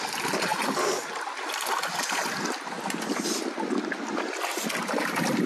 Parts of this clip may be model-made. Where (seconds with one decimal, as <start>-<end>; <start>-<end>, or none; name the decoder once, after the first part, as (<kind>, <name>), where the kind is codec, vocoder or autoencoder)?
none